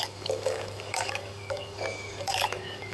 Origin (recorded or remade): remade